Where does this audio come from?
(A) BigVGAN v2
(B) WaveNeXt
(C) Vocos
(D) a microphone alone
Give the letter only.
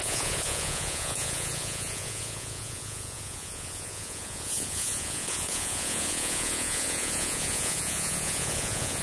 C